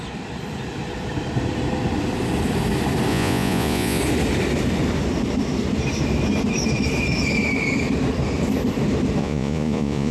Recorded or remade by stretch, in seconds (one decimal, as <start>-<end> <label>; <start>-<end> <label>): 0.0-3.1 recorded; 3.1-4.0 remade; 4.0-9.2 recorded; 9.2-10.1 remade